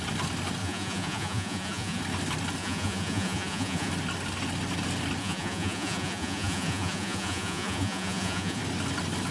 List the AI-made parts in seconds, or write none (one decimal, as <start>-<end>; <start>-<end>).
0.6-2.0; 2.6-3.9; 5.2-8.6